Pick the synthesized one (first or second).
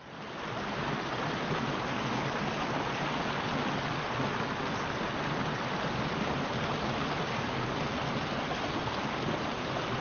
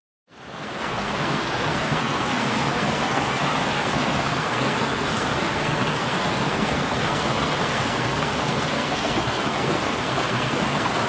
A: second